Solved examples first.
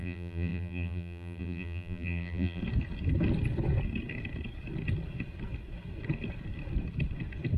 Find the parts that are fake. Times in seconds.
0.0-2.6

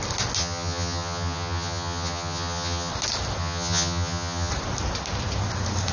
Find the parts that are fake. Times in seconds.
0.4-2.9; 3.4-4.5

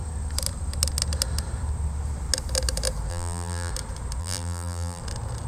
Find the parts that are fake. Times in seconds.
3.1-3.7; 4.2-5.0

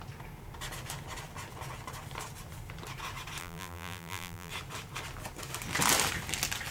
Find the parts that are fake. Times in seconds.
3.4-4.5

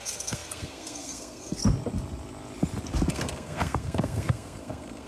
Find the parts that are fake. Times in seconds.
0.0-1.6; 3.1-5.1

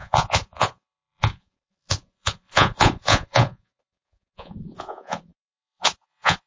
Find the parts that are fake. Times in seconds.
0.0-6.5